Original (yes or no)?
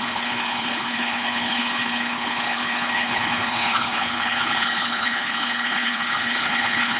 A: no